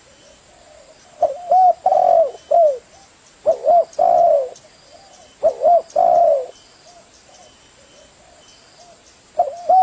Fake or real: real